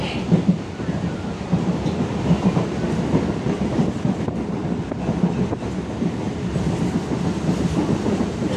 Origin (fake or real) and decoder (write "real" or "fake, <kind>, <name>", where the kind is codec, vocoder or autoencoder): real